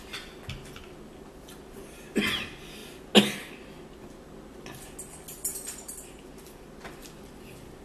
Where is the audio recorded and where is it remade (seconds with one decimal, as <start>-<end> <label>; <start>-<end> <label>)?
0.0-7.8 recorded